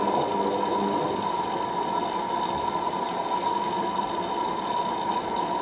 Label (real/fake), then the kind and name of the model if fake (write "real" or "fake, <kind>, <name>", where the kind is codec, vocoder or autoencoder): real